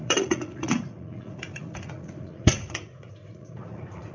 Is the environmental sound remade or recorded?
remade